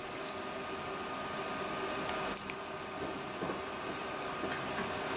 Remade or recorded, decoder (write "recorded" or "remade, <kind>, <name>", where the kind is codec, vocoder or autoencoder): recorded